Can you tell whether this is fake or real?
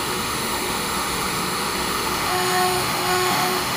fake